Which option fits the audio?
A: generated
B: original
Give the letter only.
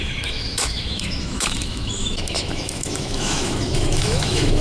A